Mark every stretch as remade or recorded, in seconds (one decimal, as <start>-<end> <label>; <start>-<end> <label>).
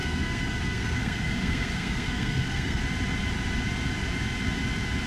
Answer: 0.0-2.8 remade; 2.8-5.1 recorded